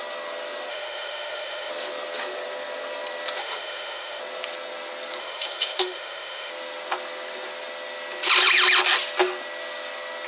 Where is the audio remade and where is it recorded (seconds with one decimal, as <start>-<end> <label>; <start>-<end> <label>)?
0.0-0.7 recorded; 0.7-1.7 remade; 1.7-3.4 recorded; 3.4-4.2 remade; 4.2-5.2 recorded; 5.2-6.5 remade; 6.5-10.3 recorded